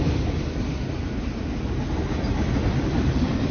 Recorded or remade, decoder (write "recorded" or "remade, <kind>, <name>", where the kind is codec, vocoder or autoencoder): recorded